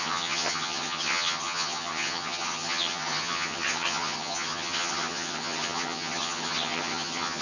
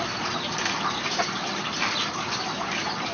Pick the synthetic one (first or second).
first